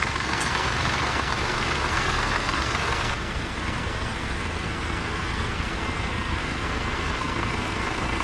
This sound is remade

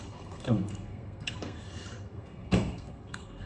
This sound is remade